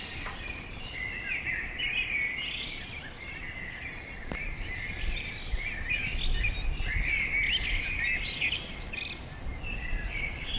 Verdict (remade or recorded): recorded